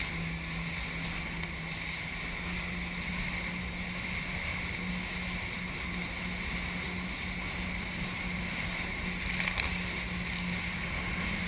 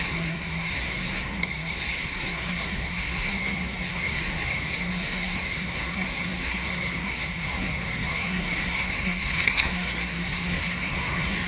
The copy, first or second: second